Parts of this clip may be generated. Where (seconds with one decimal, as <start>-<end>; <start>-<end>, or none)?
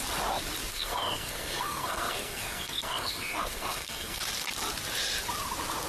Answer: 0.7-4.2